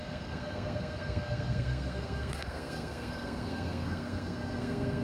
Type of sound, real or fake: fake